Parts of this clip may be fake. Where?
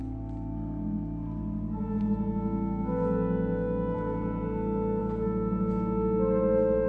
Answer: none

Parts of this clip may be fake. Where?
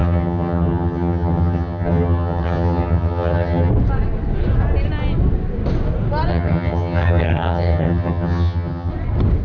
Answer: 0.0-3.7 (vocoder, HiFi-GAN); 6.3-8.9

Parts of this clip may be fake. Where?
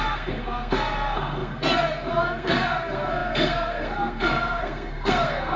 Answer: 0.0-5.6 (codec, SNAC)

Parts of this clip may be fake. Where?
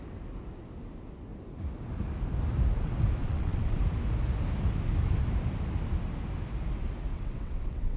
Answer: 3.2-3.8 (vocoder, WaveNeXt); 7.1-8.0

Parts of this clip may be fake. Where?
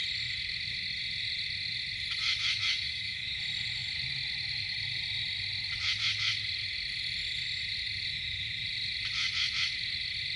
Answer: 2.5-3.4 (autoencoder, DAC-VAE)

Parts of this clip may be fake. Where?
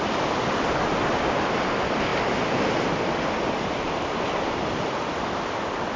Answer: 0.0-2.1 (vocoder, BigVGAN v2); 4.5-6.0